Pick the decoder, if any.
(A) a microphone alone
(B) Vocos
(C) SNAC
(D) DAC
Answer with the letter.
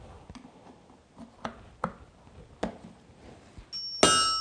A